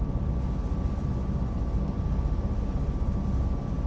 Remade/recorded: recorded